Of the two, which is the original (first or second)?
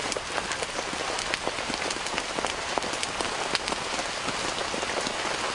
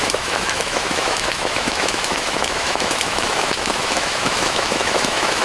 first